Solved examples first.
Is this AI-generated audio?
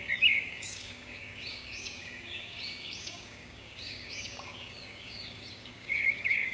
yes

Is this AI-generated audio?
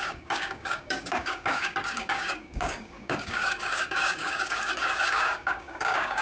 yes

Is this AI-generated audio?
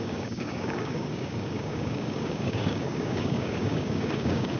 yes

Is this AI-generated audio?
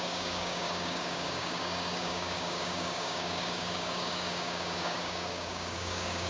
yes